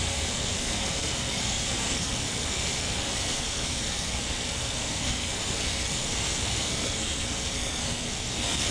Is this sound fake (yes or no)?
yes